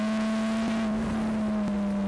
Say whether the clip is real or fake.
real